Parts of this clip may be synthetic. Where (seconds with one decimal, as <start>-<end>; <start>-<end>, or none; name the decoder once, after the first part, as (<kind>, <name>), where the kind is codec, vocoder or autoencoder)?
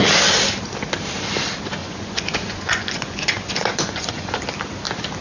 1.8-4.4 (vocoder, Vocos)